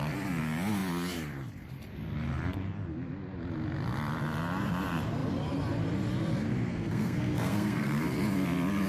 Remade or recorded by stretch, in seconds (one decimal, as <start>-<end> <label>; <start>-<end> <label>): 0.0-6.7 recorded; 6.7-8.0 remade; 8.0-8.9 recorded